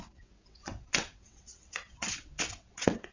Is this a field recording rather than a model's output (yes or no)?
no